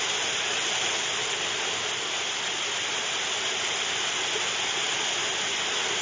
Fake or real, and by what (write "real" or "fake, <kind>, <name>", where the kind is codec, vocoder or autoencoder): real